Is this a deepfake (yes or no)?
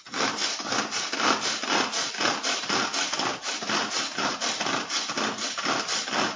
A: no